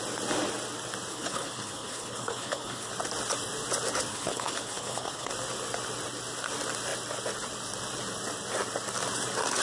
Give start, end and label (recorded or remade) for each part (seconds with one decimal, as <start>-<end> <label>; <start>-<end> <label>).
0.0-1.1 recorded; 1.1-2.9 remade; 2.9-4.1 recorded; 4.1-5.3 remade; 5.3-9.6 recorded